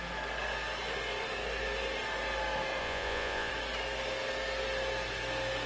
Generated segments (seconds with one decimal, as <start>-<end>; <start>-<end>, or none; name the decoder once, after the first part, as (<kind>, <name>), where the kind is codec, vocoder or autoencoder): 2.8-3.5 (vocoder, Vocos)